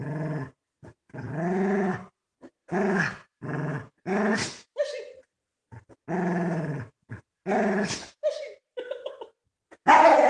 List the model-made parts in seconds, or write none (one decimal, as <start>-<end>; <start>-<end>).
none